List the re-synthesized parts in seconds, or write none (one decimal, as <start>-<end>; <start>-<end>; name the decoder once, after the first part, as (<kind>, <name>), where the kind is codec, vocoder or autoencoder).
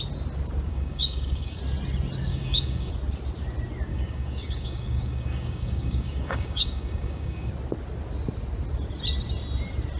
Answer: 0.7-1.6 (codec, DAC); 2.3-2.9; 3.9-7.5